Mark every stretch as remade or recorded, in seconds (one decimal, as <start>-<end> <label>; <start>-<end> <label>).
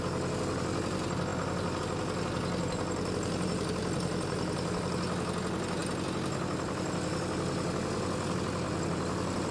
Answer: 0.0-9.5 recorded